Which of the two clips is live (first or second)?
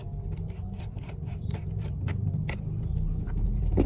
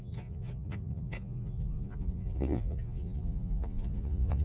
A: first